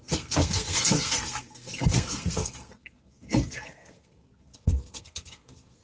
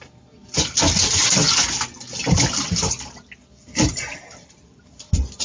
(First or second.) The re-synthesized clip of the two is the first